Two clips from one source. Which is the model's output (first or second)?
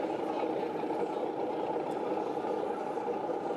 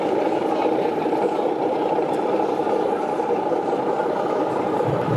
second